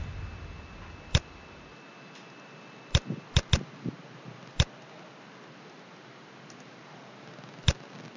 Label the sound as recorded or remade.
recorded